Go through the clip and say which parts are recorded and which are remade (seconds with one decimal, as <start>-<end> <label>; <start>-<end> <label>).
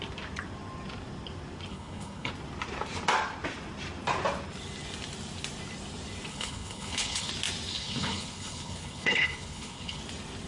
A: 0.0-1.7 recorded; 1.7-2.3 remade; 2.3-6.3 recorded; 6.3-7.3 remade; 7.3-7.7 recorded; 7.7-10.0 remade; 10.0-10.5 recorded